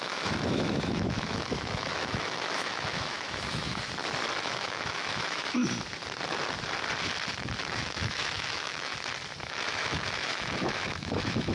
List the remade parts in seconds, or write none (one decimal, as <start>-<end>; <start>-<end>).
0.0-3.7; 4.4-5.6; 7.6-8.9; 9.4-11.5